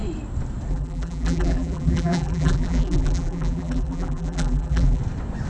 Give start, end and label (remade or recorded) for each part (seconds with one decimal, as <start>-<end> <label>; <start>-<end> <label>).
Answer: 0.0-0.7 recorded; 0.7-5.0 remade; 5.0-5.5 recorded

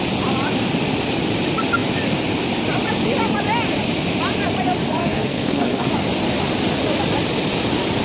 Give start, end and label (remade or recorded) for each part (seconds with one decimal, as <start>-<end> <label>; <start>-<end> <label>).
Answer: 0.0-5.0 recorded; 5.0-5.9 remade; 5.9-8.0 recorded